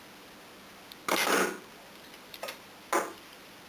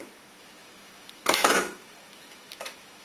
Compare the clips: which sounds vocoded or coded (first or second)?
second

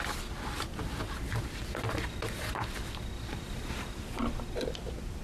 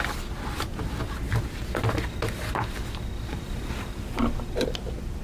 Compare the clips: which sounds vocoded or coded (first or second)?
first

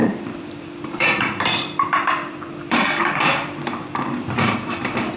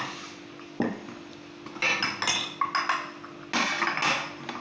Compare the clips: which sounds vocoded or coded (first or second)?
first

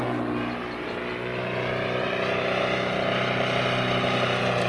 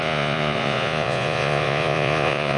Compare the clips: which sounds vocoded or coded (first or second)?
second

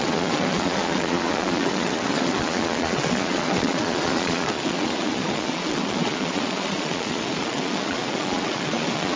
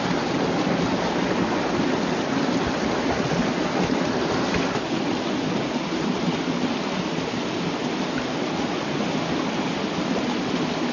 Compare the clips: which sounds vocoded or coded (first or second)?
first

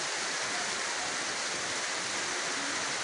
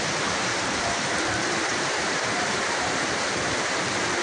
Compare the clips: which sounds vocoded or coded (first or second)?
second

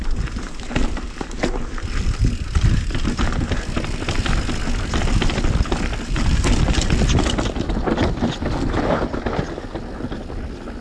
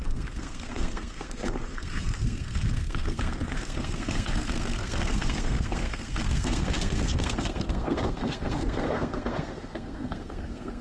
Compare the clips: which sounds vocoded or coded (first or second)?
second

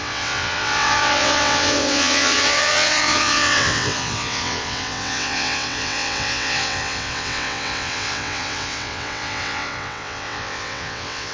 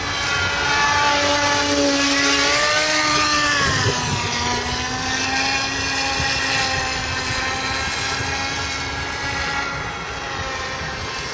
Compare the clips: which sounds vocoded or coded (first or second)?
first